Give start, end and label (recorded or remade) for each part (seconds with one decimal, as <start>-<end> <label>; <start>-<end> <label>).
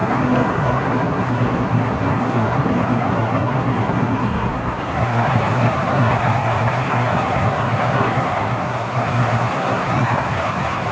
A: 0.0-10.9 remade